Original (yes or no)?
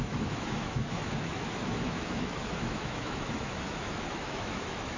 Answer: no